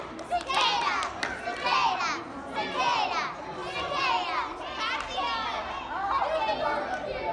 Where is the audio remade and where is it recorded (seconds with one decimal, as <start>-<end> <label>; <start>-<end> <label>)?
0.0-7.3 recorded